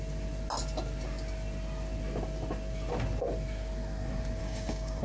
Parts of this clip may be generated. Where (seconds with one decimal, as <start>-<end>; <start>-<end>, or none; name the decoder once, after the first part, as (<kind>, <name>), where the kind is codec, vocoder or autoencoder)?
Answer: 4.4-5.0 (codec, DAC)